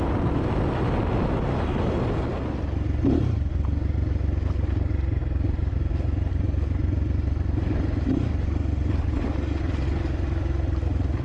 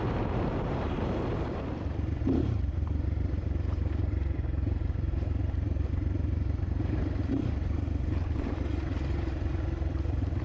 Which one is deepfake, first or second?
second